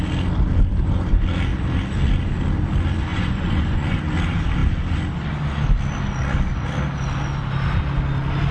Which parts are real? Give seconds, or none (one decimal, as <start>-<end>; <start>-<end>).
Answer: 0.0-3.1; 4.0-8.5